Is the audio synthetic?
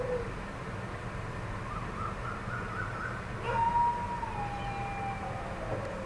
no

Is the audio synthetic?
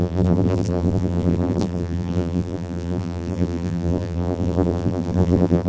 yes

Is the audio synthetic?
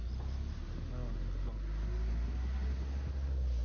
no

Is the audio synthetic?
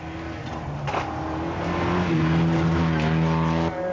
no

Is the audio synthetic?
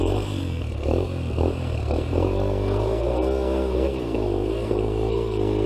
yes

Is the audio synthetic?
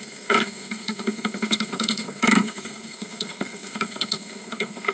yes